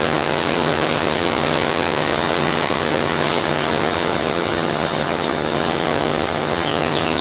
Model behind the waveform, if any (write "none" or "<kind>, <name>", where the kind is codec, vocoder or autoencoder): vocoder, HiFi-GAN